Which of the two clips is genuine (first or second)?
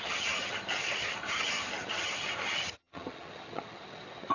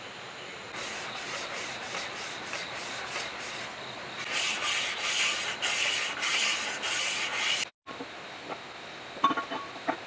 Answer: second